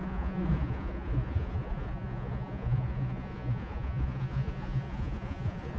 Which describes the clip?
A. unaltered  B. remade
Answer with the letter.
B